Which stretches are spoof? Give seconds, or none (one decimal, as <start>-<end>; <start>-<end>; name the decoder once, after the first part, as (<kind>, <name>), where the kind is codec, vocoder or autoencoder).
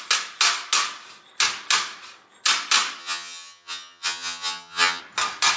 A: 3.0-5.0 (vocoder, HiFi-GAN)